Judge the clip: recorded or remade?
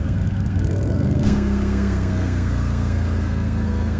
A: remade